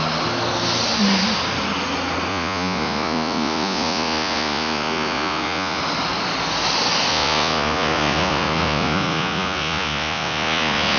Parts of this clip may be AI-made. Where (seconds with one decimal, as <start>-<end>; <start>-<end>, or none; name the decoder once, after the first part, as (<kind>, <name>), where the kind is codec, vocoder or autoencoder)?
2.3-5.8 (vocoder, Vocos); 7.1-11.0